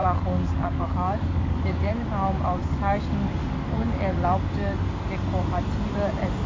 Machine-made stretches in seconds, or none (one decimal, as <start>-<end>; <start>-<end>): 0.0-1.9; 2.6-5.1